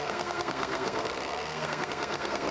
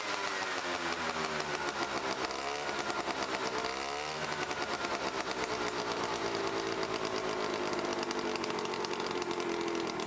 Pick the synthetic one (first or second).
first